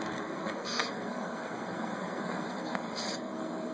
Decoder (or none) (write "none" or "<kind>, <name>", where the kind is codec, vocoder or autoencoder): codec, SNAC